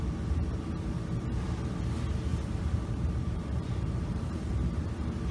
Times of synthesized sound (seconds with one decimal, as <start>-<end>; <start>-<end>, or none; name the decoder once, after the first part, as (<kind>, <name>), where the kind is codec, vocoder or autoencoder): 2.3-5.3 (vocoder, BigVGAN v2)